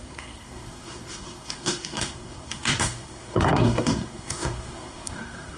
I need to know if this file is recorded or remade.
remade